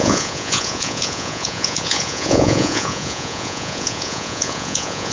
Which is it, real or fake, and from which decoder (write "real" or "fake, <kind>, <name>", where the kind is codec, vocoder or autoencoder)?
fake, vocoder, Vocos